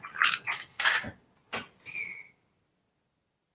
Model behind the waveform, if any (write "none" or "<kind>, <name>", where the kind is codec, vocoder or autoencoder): none